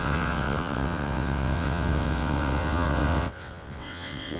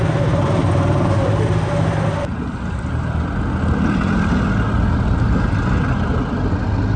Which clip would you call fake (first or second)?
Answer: first